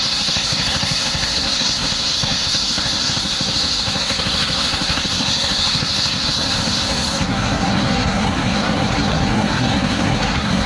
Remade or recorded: remade